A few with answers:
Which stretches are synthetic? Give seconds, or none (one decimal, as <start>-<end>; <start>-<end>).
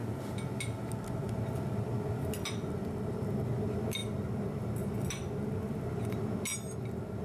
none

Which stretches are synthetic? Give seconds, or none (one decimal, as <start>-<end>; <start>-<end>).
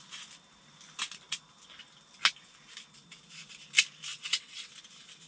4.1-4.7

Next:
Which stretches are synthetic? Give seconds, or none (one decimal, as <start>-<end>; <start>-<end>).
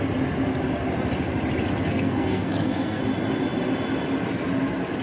1.8-3.0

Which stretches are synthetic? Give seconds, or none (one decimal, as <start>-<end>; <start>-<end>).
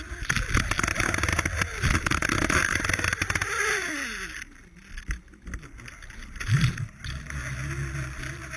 none